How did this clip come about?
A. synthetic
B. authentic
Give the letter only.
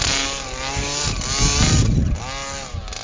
B